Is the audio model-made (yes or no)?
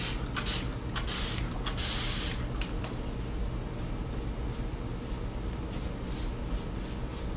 no